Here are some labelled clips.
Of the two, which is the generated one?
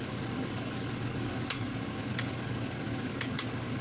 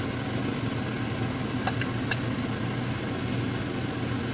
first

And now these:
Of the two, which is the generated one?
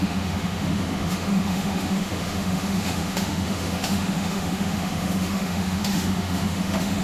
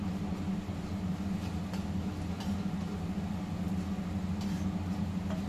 first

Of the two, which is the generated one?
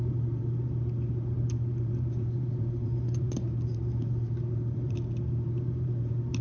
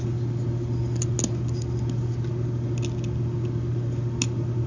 first